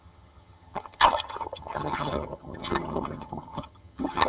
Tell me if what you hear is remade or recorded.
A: remade